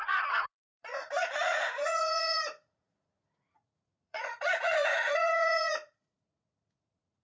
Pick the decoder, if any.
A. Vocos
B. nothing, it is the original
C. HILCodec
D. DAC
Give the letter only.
A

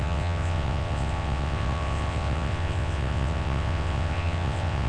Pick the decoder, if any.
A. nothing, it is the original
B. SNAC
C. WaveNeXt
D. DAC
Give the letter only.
C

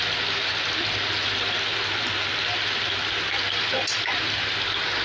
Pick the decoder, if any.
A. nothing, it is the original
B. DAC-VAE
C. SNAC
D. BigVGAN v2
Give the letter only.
A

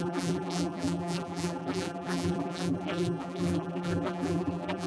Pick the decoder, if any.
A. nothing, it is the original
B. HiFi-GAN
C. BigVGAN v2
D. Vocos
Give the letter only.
C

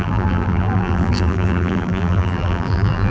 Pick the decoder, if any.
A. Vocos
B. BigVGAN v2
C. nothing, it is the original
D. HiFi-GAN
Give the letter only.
B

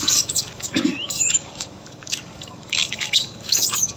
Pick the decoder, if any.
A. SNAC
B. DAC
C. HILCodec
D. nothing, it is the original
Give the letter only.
B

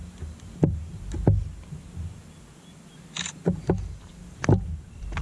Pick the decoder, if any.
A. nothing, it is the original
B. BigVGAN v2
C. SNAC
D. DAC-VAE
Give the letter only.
A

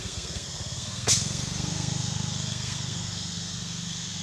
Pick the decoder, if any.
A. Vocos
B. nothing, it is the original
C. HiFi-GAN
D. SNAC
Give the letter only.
D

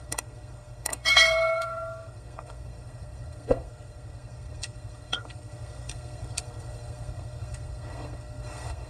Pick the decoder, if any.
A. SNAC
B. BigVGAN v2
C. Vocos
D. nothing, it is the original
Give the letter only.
A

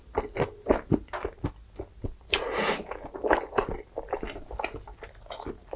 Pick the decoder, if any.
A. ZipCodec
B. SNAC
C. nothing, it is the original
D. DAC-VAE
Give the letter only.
C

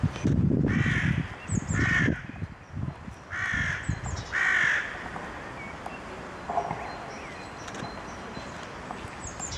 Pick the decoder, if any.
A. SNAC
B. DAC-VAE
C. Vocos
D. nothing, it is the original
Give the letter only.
D